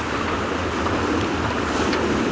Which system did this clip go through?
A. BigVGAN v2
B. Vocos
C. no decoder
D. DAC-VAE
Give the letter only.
C